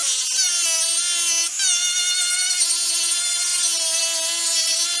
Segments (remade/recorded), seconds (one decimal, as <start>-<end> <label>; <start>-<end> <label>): 0.0-5.0 recorded